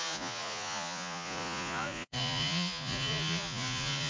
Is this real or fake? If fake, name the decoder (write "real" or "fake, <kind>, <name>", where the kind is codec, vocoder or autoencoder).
fake, vocoder, Vocos